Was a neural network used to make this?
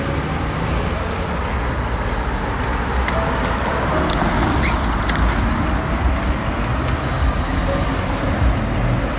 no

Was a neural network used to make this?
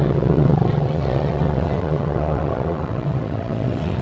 yes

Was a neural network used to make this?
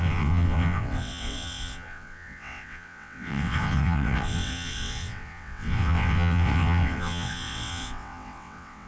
yes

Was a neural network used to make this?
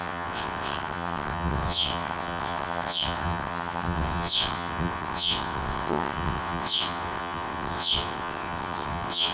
yes